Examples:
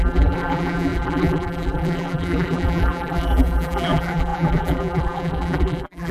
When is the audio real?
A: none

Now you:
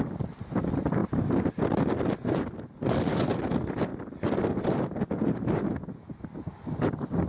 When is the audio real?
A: 0.0-7.3

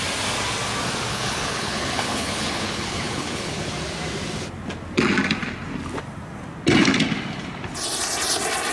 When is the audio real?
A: 0.0-1.1; 3.7-8.7